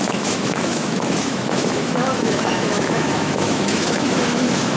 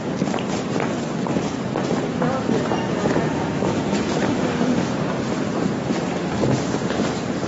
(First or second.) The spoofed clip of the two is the first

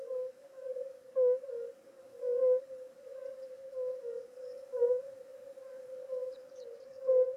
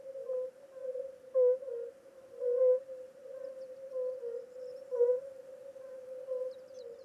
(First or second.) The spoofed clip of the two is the first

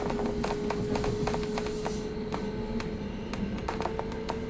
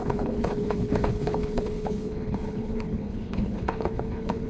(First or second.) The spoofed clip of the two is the second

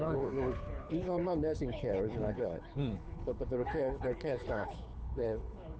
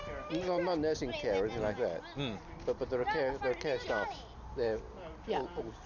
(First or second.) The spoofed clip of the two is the first